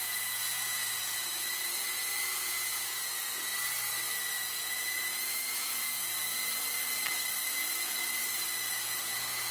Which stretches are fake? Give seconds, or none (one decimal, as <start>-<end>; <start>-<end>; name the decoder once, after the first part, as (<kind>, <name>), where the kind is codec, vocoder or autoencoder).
0.0-3.5 (vocoder, Vocos); 4.4-6.4; 8.6-9.5